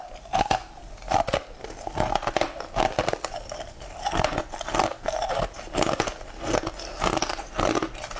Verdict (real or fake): real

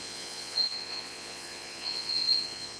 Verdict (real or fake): fake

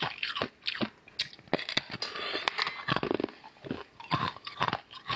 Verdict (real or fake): real